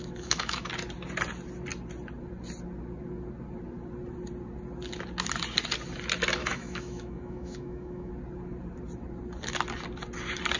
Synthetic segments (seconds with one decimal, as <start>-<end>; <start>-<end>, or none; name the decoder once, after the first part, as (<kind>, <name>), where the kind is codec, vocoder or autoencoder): 0.0-0.7 (autoencoder, DAC-VAE); 6.4-8.1